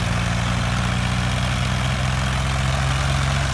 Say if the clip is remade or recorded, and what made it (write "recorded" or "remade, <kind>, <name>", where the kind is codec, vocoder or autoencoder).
recorded